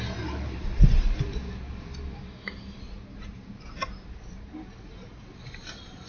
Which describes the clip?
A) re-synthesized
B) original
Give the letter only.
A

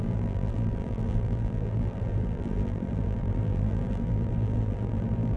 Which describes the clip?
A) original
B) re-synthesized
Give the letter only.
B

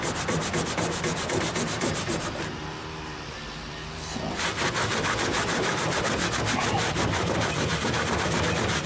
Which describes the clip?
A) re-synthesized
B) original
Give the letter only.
A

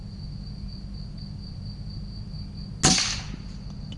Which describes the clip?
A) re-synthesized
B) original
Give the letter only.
B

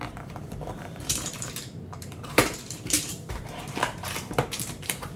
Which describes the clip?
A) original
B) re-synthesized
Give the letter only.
B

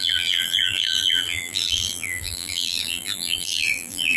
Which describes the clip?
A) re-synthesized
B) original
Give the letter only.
A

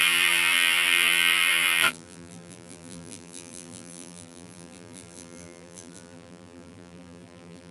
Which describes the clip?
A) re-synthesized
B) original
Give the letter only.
A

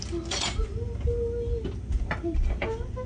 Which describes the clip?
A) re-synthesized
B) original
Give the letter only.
B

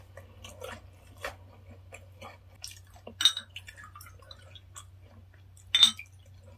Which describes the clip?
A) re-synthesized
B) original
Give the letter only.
B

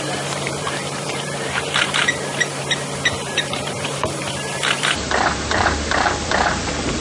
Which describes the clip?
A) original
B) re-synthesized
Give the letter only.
B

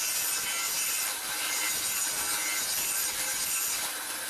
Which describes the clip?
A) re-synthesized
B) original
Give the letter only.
B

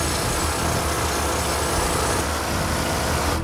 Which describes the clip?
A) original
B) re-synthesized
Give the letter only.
A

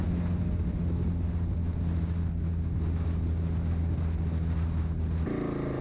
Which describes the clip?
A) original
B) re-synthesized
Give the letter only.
A